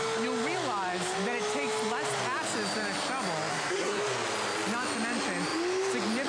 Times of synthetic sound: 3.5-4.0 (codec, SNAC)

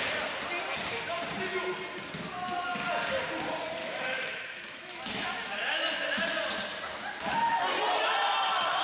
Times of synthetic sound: 3.8-5.3 (autoencoder, DAC-VAE)

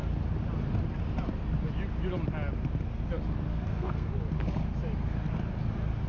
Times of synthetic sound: 3.5-4.1 (codec, SNAC)

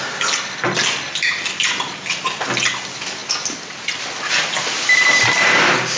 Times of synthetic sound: none

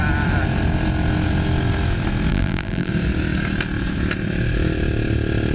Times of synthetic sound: 2.3-2.9 (vocoder, BigVGAN v2)

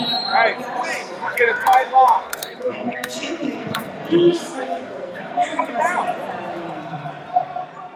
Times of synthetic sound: 1.0-5.8 (codec, SNAC); 6.6-7.1

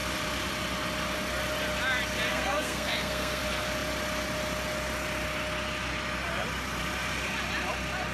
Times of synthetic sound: 2.3-3.4 (codec, SNAC)

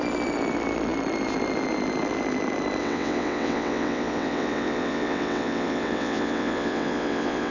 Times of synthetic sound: 2.8-7.5 (vocoder, WaveNeXt)